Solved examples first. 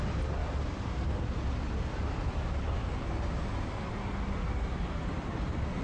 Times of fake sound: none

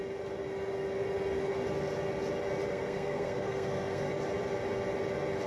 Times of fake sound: 2.7-4.1 (codec, SNAC)

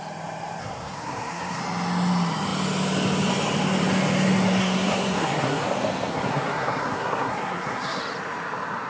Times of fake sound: 0.6-1.6 (codec, SNAC); 4.6-5.6; 6.1-8.0

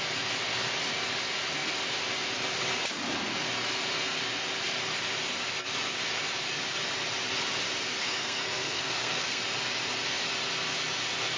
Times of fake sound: 8.0-9.4 (codec, SNAC)

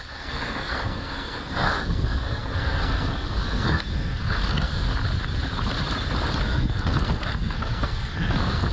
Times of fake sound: 0.0-4.9 (codec, SNAC); 6.4-8.7

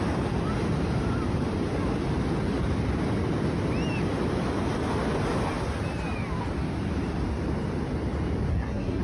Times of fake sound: 8.5-9.0 (codec, SNAC)